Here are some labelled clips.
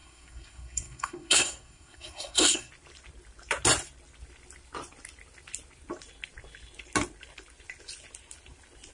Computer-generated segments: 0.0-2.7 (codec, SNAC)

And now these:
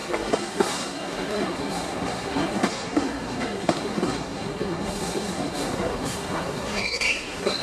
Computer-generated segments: 0.0-7.6 (codec, SNAC)

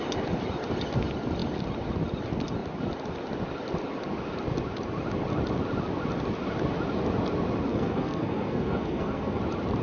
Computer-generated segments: 7.7-9.4 (codec, SNAC)

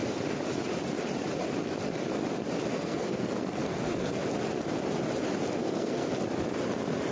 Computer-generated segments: 2.7-4.2 (codec, SNAC); 5.6-6.1

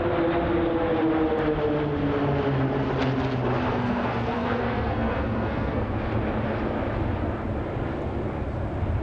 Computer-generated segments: 3.7-5.9 (codec, SNAC)

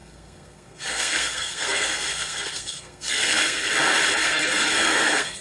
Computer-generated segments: 0.0-3.7 (codec, SNAC); 4.2-5.4

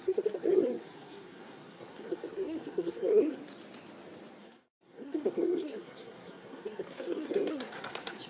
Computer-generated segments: 0.0-3.4 (codec, SNAC); 4.4-8.3

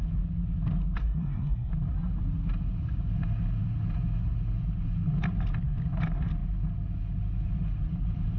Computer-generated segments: 1.0-1.7 (codec, SNAC)